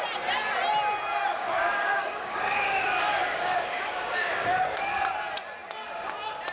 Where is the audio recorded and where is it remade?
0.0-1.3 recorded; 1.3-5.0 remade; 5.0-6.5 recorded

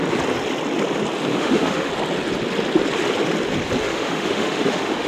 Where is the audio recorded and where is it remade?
0.0-1.3 recorded; 1.3-1.9 remade; 1.9-3.8 recorded; 3.8-5.1 remade